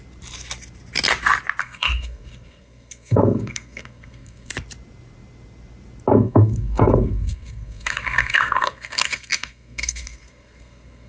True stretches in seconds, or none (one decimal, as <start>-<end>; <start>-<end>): 0.0-1.6; 4.5-6.1